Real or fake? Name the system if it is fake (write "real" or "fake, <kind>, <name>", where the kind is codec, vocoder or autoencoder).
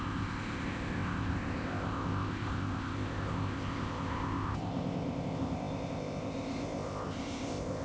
fake, codec, ZipCodec